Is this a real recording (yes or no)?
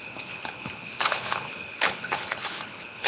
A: no